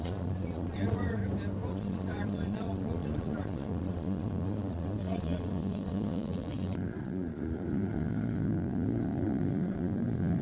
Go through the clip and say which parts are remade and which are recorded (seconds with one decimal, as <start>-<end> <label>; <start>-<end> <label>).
0.0-1.2 remade; 1.2-1.7 recorded; 1.7-10.4 remade